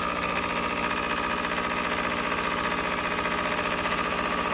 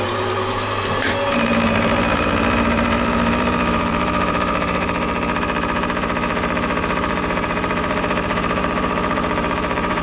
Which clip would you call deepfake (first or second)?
second